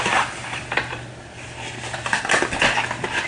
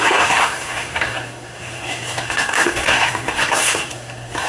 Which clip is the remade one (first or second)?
second